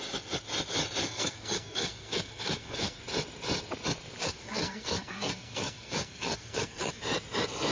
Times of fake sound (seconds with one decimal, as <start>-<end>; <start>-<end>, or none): 1.0-3.0; 4.2-7.0